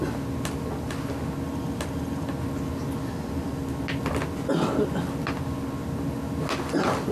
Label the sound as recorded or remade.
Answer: recorded